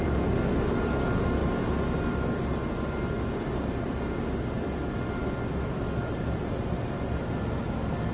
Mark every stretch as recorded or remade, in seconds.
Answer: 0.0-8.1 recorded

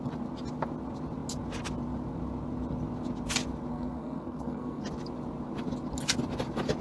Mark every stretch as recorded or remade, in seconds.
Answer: 0.0-3.7 recorded; 3.7-4.8 remade; 4.8-6.8 recorded